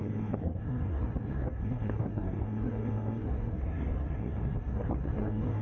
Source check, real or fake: fake